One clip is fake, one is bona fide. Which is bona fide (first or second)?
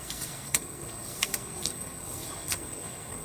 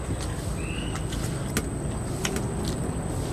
second